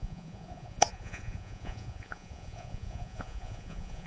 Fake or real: fake